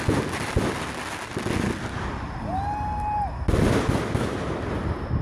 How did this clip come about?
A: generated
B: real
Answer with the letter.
B